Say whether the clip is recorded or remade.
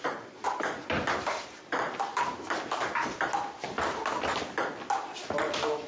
recorded